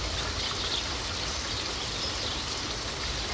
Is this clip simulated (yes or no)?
no